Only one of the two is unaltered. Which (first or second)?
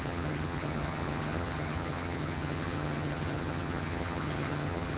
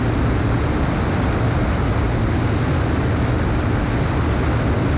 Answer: second